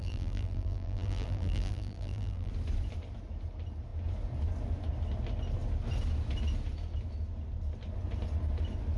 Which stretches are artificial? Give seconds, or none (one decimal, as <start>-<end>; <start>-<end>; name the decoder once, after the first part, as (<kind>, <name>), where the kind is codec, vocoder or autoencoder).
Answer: 0.0-2.5 (vocoder, BigVGAN v2)